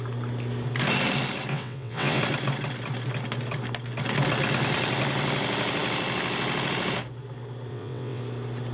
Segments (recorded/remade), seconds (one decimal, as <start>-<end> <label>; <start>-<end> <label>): 0.0-1.5 recorded; 1.5-2.2 remade; 2.2-7.7 recorded; 7.7-8.2 remade; 8.2-8.7 recorded